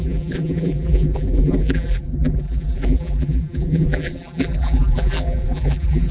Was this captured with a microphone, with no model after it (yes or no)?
no